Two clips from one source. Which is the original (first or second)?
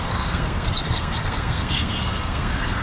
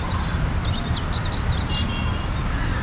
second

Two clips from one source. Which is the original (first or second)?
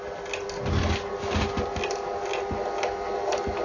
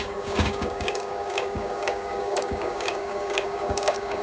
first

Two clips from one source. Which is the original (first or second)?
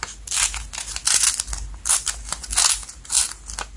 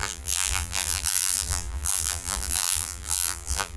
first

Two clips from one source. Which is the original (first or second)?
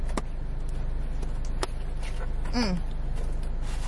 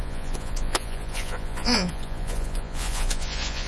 first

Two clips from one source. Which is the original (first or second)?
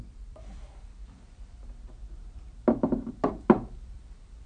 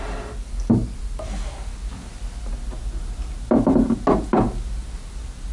second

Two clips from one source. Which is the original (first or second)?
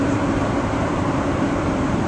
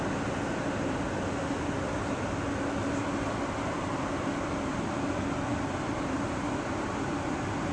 second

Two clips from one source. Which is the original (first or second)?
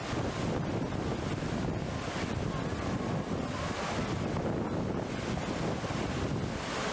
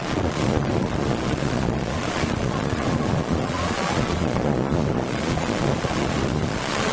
first